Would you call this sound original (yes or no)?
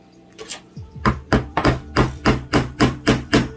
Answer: no